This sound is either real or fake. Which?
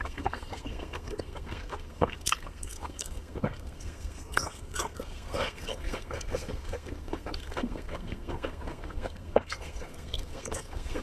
fake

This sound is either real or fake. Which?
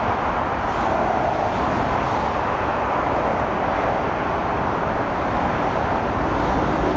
real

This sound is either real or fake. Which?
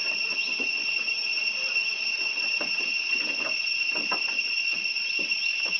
real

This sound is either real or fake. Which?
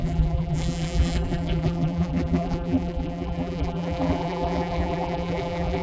fake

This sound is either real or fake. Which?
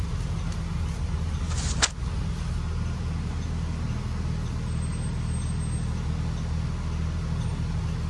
real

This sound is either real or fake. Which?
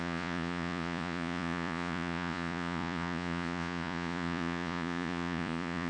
fake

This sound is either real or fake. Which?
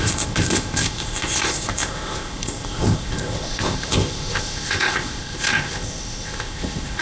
fake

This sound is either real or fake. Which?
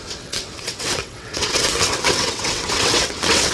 fake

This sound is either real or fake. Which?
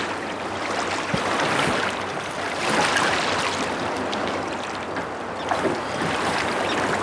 real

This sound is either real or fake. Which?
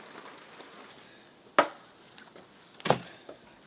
real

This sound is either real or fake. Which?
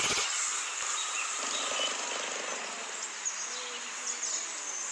real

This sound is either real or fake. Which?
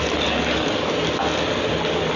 real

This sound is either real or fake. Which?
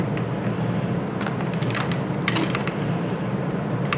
real